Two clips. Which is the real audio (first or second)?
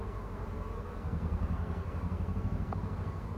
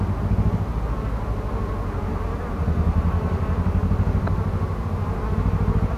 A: second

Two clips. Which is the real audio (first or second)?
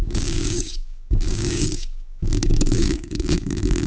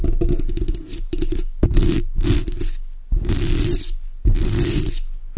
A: second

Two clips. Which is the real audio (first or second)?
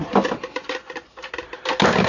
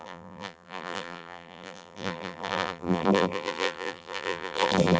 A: first